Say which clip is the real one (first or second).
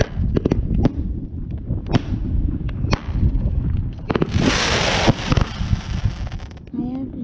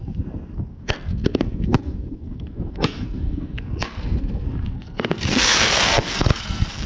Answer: first